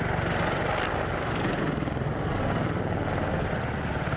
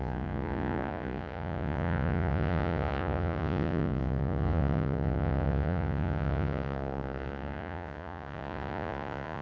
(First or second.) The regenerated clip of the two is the second